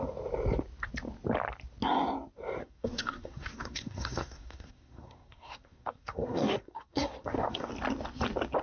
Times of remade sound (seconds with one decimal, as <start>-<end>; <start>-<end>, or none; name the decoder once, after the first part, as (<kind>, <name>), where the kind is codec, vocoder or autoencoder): 2.6-7.7 (codec, SNAC)